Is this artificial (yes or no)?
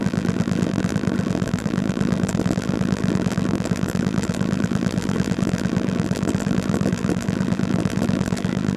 yes